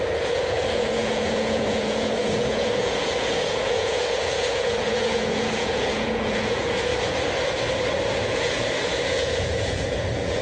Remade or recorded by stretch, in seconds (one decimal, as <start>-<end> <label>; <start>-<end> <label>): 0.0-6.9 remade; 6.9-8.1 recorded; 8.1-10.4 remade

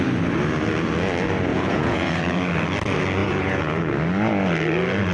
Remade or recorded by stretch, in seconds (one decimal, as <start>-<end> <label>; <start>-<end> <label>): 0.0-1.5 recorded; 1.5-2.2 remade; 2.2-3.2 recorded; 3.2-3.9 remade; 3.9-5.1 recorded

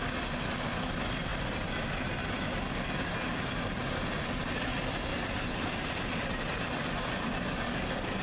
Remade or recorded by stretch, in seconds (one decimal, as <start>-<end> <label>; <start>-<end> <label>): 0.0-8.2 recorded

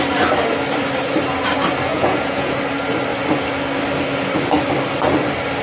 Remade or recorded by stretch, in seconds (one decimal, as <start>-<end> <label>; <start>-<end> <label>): 0.0-1.9 recorded; 1.9-2.6 remade; 2.6-5.6 recorded

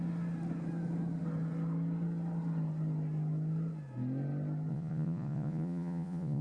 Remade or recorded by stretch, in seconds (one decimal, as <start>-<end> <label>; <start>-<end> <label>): 0.0-4.7 recorded; 4.7-6.4 remade

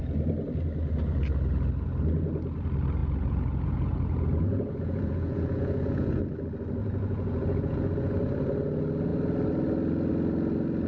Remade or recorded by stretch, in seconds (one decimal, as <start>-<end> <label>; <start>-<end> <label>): 0.0-3.0 recorded; 3.0-6.2 remade; 6.2-6.8 recorded; 6.8-8.1 remade; 8.1-10.9 recorded